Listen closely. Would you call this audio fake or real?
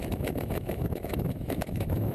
fake